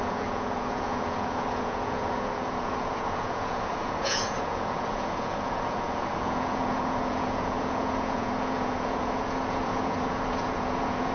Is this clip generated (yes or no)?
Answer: yes